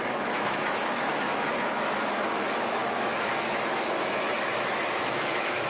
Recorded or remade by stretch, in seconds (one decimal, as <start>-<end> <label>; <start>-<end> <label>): 0.0-5.7 remade